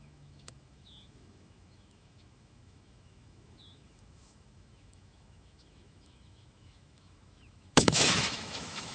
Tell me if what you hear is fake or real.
fake